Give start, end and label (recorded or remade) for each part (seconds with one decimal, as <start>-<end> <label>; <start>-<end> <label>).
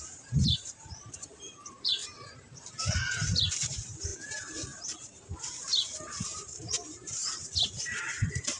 0.0-8.6 remade